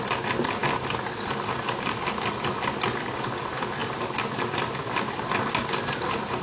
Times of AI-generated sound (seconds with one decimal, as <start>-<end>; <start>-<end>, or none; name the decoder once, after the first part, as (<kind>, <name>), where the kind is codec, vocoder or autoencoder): none